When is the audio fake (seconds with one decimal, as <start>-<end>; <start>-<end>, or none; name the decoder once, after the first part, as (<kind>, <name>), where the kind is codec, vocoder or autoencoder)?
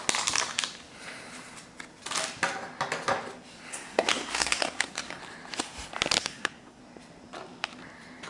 3.7-5.2 (codec, SNAC); 6.2-6.8